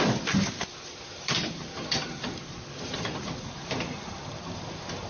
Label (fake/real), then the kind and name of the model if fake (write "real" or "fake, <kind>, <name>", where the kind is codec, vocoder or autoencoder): fake, vocoder, BigVGAN v2